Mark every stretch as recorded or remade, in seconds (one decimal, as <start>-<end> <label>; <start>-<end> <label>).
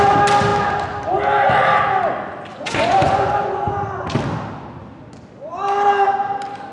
0.0-2.5 recorded; 2.5-3.7 remade; 3.7-6.7 recorded